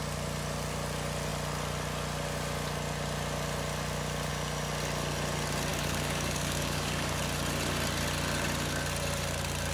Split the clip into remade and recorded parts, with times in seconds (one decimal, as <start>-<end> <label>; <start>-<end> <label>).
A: 0.0-5.7 recorded; 5.7-7.2 remade; 7.2-9.7 recorded